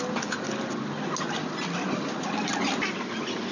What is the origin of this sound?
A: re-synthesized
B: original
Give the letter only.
B